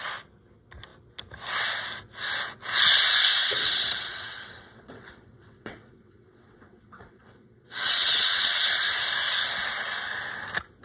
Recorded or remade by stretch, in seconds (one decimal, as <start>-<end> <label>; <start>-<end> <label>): 0.0-3.4 recorded; 3.4-8.6 remade; 8.6-10.8 recorded